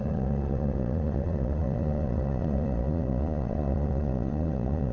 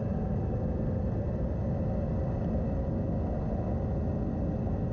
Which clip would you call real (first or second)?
second